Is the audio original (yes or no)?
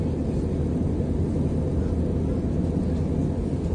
yes